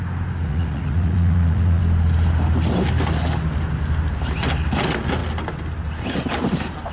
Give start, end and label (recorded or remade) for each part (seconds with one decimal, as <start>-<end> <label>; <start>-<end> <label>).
0.0-0.4 recorded; 0.4-1.8 remade; 1.8-6.9 recorded